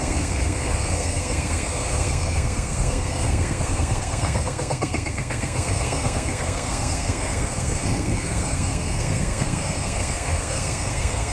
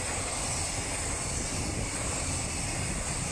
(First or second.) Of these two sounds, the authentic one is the second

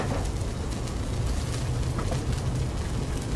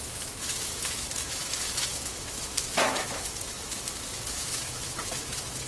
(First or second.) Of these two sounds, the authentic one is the first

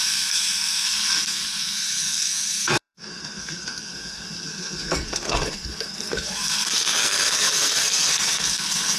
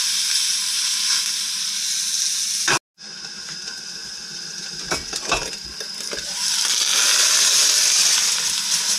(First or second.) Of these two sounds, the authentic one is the second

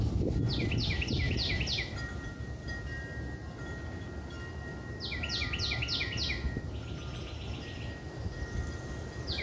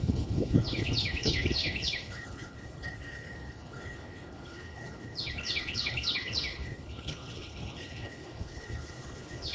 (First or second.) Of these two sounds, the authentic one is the first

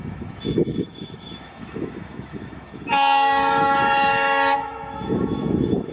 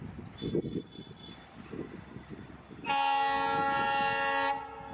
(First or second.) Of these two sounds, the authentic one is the second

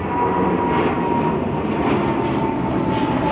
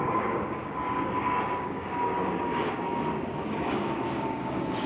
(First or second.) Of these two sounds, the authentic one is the first